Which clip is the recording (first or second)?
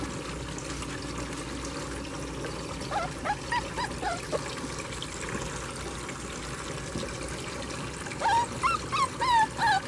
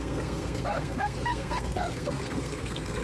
first